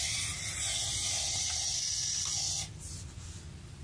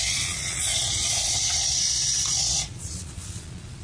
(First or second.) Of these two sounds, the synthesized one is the second